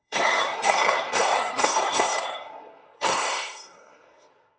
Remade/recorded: remade